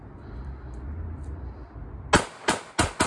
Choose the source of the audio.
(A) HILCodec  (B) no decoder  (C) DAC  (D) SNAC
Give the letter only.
B